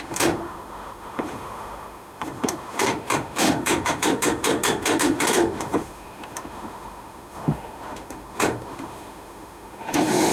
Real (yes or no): no